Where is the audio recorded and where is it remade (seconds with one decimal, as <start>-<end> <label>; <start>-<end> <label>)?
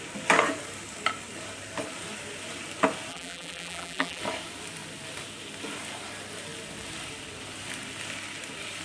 0.0-3.1 recorded; 3.1-4.2 remade; 4.2-8.8 recorded